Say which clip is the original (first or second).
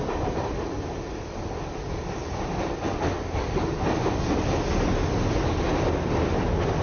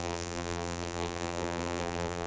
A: first